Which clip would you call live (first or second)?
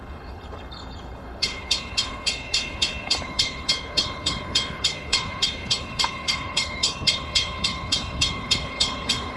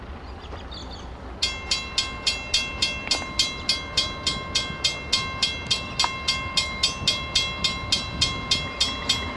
second